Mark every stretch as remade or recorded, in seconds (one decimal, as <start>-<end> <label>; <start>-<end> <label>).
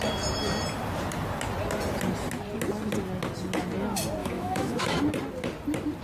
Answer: 0.0-4.2 recorded; 4.2-5.0 remade; 5.0-6.0 recorded